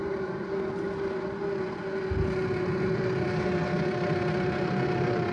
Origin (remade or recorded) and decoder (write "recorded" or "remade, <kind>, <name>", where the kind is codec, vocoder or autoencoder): recorded